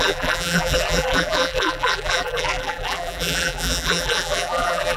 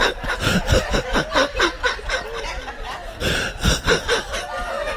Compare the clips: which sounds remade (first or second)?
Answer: first